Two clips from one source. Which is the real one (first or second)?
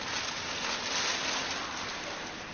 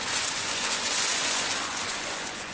first